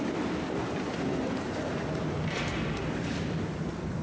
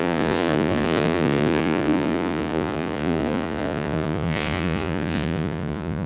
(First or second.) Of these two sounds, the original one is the first